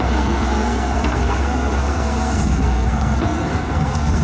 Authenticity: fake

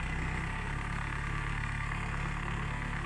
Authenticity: fake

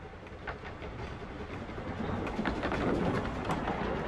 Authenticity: real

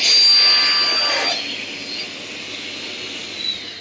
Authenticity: real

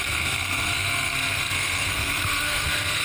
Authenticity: fake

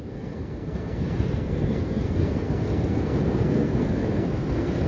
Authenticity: fake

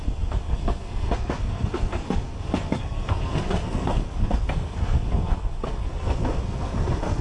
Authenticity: fake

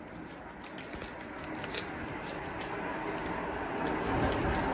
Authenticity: real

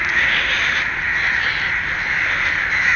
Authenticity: real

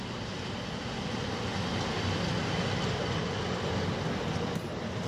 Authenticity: real